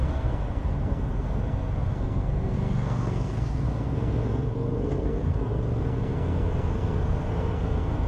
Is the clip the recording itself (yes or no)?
no